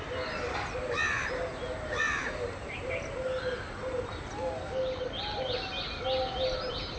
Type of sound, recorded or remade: recorded